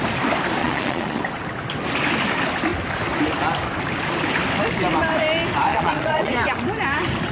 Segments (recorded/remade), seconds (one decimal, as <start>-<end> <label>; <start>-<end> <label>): 0.0-0.6 recorded; 0.6-1.2 remade; 1.2-5.7 recorded; 5.7-6.3 remade; 6.3-7.3 recorded